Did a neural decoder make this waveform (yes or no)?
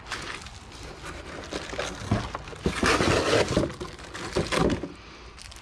no